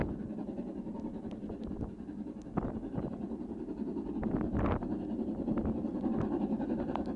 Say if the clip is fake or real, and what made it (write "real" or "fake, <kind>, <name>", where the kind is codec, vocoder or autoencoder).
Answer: real